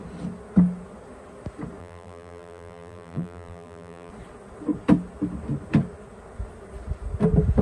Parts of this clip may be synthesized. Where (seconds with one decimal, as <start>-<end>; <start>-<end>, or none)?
1.8-4.1